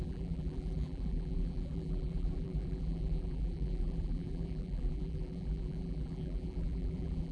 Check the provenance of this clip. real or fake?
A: fake